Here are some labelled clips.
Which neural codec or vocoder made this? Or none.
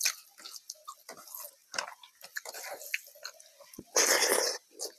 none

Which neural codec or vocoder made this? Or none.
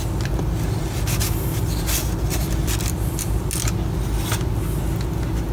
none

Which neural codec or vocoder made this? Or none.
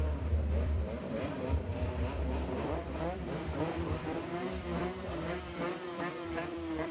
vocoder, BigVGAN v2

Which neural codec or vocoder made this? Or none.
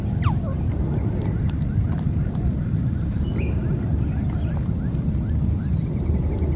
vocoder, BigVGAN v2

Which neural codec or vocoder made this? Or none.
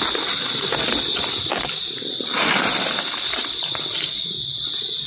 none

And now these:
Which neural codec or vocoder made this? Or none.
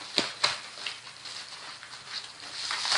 none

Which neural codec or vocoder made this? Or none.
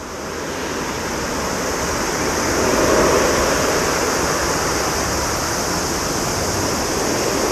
none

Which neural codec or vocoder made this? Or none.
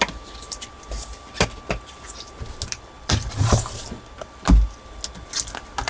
none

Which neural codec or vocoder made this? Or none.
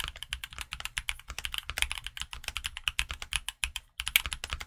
none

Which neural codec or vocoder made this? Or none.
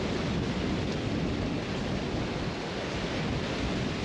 none